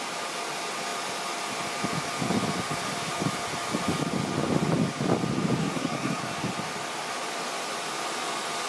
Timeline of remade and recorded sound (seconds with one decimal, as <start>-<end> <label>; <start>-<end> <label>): 0.0-5.6 recorded; 5.6-6.2 remade; 6.2-8.7 recorded